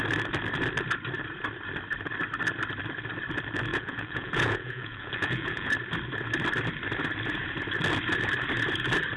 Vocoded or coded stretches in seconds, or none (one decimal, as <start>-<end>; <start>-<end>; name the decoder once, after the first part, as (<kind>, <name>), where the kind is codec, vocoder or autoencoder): 3.7-5.7 (vocoder, Vocos)